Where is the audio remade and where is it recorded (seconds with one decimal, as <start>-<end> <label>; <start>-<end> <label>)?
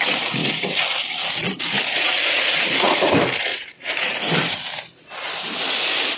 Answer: 0.0-1.9 recorded; 1.9-3.1 remade; 3.1-3.5 recorded; 3.5-4.3 remade; 4.3-6.2 recorded